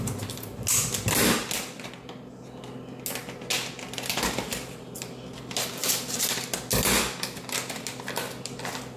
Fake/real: real